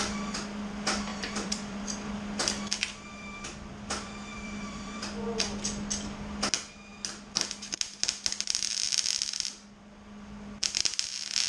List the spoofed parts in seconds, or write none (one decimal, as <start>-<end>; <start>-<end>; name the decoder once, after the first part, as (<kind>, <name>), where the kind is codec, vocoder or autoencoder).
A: 1.1-1.8 (vocoder, BigVGAN v2); 3.1-3.7; 4.3-5.0